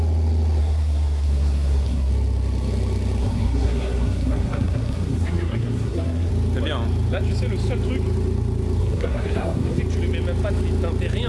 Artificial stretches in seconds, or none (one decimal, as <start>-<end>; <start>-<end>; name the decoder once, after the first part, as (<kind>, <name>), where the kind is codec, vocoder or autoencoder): 0.6-2.1 (codec, SNAC); 3.2-6.3; 8.8-9.8